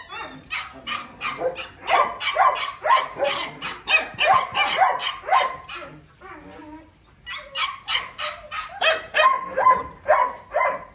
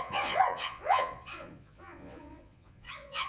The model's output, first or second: second